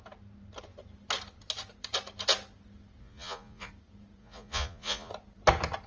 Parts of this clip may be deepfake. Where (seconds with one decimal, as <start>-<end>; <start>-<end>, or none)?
3.0-3.7; 4.2-5.1

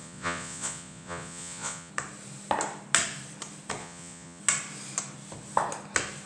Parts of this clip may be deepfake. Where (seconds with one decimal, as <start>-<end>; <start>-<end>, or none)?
0.0-1.9; 3.8-4.4

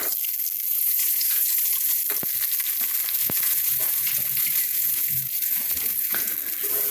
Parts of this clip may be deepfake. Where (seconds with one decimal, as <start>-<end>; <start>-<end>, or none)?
0.7-2.0; 3.2-6.3

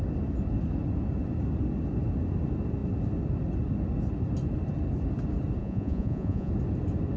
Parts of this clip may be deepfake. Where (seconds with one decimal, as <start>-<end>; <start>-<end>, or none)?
5.6-6.5

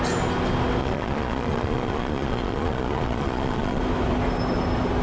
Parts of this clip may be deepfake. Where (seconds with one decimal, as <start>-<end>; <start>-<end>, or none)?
0.8-3.8

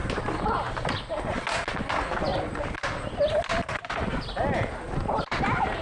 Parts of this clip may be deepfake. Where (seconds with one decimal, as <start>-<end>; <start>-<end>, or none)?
none

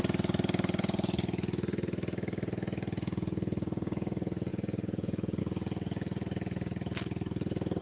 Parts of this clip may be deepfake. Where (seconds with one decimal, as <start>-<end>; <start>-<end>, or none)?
4.5-5.4

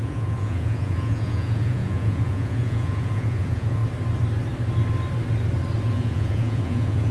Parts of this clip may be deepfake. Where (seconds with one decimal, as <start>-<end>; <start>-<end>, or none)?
0.0-3.8; 5.9-7.1